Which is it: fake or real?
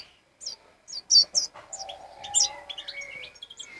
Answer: real